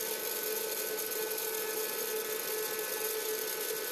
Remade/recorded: recorded